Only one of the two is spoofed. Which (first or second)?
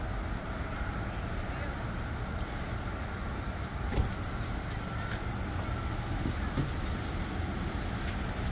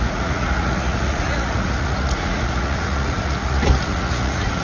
second